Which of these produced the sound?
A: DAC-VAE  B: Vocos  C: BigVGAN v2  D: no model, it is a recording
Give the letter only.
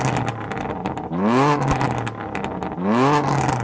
D